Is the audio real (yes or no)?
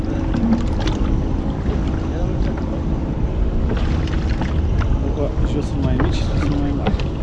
yes